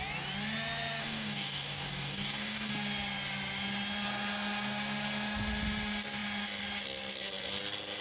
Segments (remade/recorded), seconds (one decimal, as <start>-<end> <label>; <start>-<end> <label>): 0.0-1.0 recorded; 1.0-2.7 remade; 2.7-8.0 recorded